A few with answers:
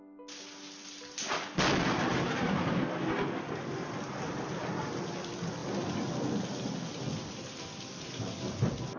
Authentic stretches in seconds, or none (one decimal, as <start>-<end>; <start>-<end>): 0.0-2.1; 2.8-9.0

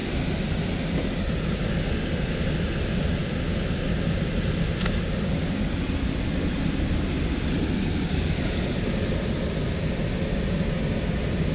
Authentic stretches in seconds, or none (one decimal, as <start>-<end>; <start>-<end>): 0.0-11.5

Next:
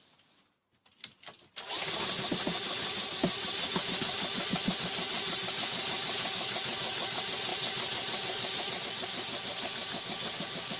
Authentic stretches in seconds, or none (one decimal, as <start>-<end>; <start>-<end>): 0.0-7.5; 8.8-10.8

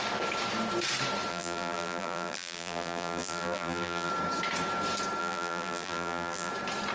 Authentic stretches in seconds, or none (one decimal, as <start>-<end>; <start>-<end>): 0.0-1.3; 4.1-5.2; 6.5-6.9

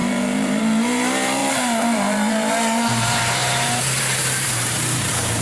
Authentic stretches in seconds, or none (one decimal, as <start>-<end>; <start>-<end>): none

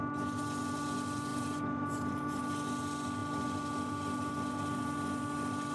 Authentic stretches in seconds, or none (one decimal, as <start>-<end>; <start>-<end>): 0.0-1.3; 2.4-5.7